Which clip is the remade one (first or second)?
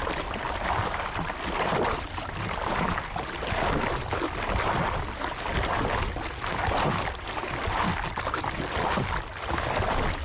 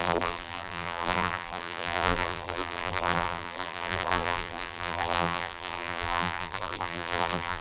second